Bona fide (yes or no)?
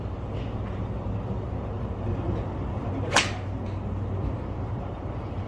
yes